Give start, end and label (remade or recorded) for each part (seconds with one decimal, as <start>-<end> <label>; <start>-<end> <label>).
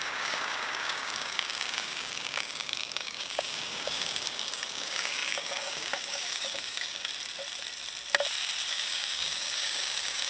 0.0-7.1 remade; 7.1-8.7 recorded; 8.7-10.3 remade